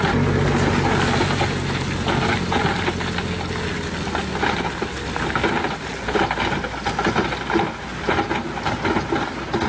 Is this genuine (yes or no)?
yes